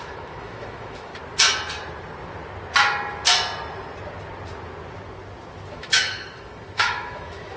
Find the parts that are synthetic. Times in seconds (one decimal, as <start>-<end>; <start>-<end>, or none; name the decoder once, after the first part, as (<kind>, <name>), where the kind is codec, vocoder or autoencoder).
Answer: 0.0-1.1 (autoencoder, DAC-VAE); 5.7-7.6